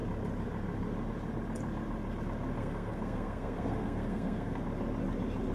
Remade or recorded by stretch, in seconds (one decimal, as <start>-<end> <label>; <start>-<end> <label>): 0.0-2.6 recorded; 2.6-4.6 remade; 4.6-5.5 recorded

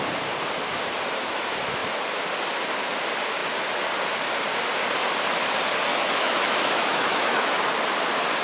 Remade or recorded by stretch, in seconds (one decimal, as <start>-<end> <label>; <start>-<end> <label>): 0.0-5.9 recorded; 5.9-7.6 remade; 7.6-8.4 recorded

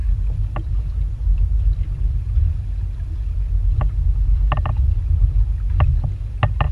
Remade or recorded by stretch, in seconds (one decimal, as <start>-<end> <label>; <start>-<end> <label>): 0.0-6.7 recorded

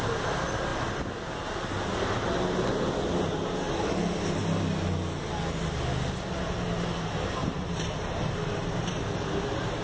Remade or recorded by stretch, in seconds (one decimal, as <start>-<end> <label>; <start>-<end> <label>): 0.0-7.4 recorded; 7.4-8.9 remade; 8.9-9.8 recorded

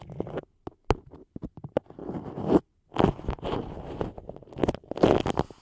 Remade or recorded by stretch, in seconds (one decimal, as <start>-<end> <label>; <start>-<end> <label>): 0.0-5.6 recorded

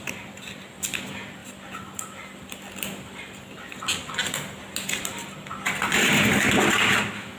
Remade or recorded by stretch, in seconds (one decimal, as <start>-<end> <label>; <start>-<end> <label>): 0.0-1.4 recorded; 1.4-3.4 remade; 3.4-7.4 recorded

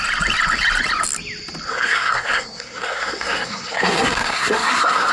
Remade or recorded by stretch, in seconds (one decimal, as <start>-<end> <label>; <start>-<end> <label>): 0.0-1.7 recorded; 1.7-5.1 remade